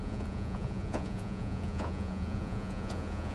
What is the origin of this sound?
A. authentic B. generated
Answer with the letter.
B